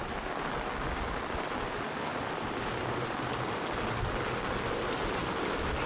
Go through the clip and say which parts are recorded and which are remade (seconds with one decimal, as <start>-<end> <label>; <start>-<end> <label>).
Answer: 0.0-5.9 recorded